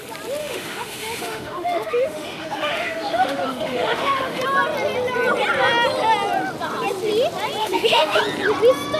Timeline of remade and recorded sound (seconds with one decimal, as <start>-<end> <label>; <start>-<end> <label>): 0.0-0.4 recorded; 0.4-4.4 remade; 4.4-7.6 recorded; 7.6-8.2 remade; 8.2-9.0 recorded